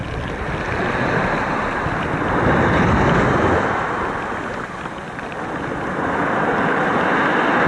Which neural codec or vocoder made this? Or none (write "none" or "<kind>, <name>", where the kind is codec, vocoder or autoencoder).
none